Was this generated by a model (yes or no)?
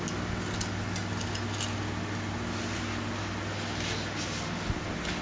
no